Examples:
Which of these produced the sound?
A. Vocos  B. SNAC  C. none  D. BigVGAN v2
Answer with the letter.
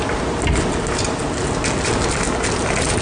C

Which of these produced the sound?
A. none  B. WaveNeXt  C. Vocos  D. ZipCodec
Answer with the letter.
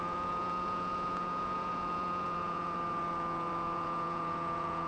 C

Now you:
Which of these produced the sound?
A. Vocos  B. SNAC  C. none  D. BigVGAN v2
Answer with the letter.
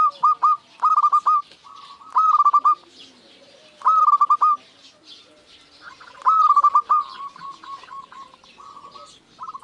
C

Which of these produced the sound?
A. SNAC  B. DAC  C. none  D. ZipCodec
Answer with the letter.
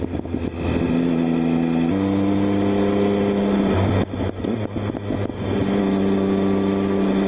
C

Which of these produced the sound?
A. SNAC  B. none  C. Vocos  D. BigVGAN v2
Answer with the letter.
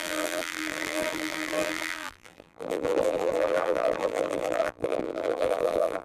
D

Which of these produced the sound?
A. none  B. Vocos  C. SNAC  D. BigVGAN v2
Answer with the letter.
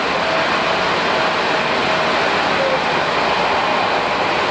A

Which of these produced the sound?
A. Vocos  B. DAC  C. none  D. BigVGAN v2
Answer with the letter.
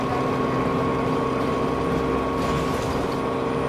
C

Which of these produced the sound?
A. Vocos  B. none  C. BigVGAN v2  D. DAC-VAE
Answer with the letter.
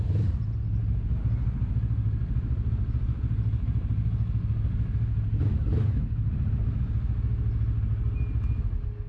B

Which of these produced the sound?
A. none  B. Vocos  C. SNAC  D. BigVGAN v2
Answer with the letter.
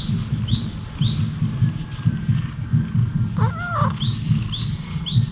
A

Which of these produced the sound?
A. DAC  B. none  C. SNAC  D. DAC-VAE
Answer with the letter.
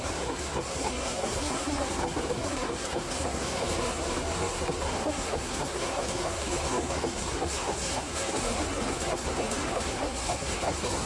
C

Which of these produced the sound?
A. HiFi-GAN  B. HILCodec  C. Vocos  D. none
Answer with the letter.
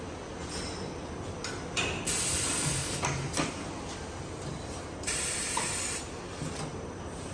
D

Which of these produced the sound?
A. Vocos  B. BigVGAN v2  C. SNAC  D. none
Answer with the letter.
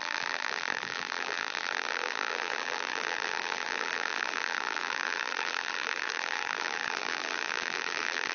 B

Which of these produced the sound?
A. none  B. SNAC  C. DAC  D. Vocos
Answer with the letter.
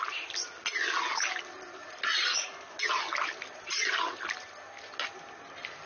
A